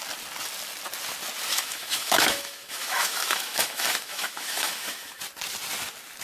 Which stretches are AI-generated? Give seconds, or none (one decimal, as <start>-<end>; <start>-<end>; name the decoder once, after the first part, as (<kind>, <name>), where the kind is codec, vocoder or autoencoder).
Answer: 1.5-5.2 (autoencoder, DAC-VAE)